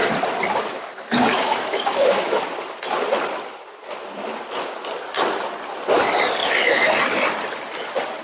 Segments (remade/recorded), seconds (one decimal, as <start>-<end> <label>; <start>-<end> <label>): 0.0-1.3 recorded; 1.3-2.4 remade; 2.4-6.4 recorded; 6.4-6.9 remade; 6.9-8.2 recorded

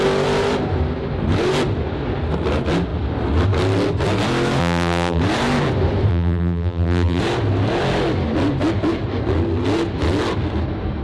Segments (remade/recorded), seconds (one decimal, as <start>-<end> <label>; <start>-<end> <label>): 0.0-4.6 recorded; 4.6-5.2 remade; 5.2-6.1 recorded; 6.1-7.2 remade; 7.2-11.0 recorded

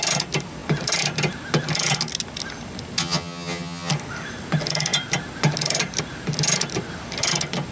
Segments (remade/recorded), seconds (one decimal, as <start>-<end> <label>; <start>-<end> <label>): 0.0-3.0 recorded; 3.0-3.9 remade; 3.9-7.7 recorded

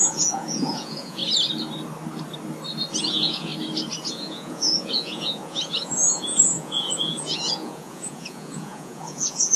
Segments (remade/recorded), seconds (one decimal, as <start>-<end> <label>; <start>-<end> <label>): 0.0-1.2 remade; 1.2-3.0 recorded; 3.0-3.5 remade; 3.5-4.1 recorded; 4.1-9.6 remade

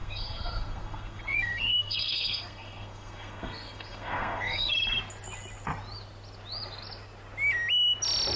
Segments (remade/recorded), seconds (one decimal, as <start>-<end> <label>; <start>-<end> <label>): 0.0-4.7 remade; 4.7-8.4 recorded

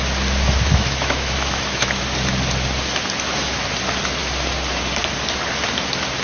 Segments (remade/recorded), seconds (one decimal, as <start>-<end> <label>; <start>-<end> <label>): 0.0-0.7 recorded; 0.7-2.0 remade; 2.0-6.2 recorded